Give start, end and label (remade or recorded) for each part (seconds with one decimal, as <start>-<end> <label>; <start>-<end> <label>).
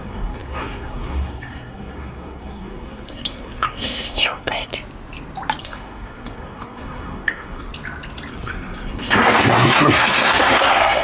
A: 0.0-4.7 remade; 4.7-5.6 recorded; 5.6-7.7 remade; 7.7-8.3 recorded; 8.3-11.0 remade